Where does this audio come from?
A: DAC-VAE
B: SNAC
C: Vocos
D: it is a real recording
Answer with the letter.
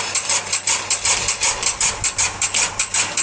D